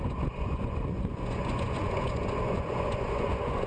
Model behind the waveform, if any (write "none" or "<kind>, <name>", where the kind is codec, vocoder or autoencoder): vocoder, Vocos